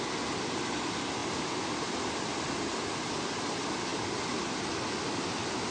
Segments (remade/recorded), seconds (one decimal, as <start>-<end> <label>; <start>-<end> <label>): 0.0-5.7 recorded